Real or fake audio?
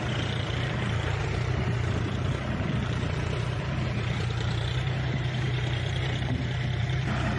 fake